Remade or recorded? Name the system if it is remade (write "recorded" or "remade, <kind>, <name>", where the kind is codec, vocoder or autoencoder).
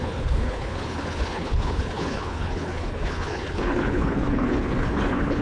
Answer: remade, codec, HILCodec